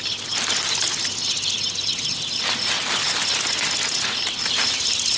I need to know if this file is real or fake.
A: real